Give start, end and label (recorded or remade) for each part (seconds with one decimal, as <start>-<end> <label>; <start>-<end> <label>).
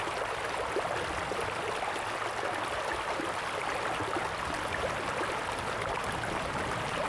0.0-7.1 recorded